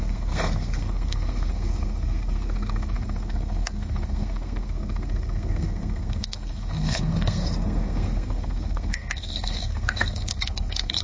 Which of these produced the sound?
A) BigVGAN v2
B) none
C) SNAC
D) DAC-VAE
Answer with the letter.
C